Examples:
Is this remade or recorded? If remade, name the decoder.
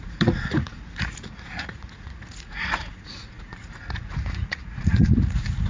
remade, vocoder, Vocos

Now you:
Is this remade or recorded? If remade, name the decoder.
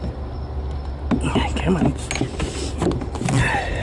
recorded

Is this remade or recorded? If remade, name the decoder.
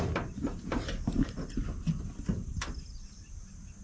recorded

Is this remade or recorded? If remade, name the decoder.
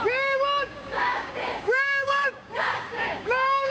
remade, codec, DAC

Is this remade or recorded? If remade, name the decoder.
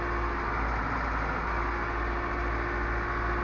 recorded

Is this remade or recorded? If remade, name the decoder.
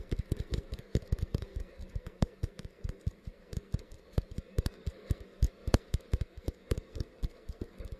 remade, codec, SNAC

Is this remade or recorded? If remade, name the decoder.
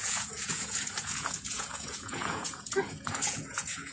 remade, vocoder, Vocos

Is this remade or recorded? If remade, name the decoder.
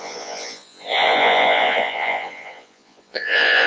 remade, vocoder, Vocos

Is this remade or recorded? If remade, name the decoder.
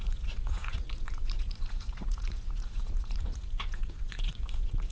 remade, vocoder, Vocos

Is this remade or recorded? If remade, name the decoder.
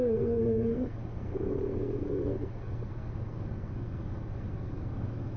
remade, codec, SNAC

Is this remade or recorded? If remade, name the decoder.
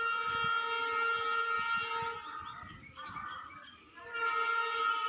recorded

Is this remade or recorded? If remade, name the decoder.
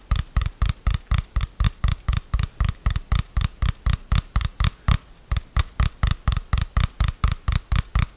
recorded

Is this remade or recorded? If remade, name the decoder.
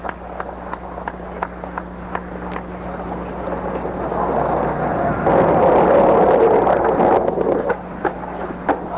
recorded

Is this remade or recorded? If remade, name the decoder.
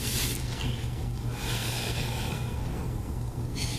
remade, codec, SNAC